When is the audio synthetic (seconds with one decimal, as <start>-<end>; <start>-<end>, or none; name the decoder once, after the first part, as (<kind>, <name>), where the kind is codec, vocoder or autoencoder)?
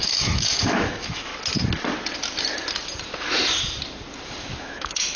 0.0-1.3 (autoencoder, DAC-VAE); 4.4-5.2